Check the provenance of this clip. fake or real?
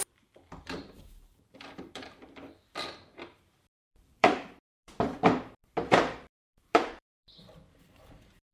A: fake